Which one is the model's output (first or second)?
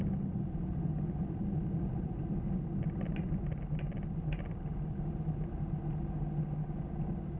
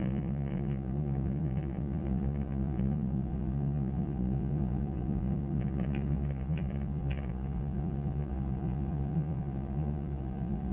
second